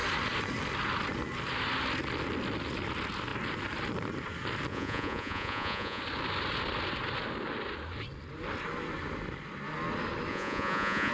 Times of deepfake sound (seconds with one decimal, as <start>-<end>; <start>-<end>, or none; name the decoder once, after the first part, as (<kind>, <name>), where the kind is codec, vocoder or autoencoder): 4.7-6.0 (vocoder, Vocos); 10.3-11.1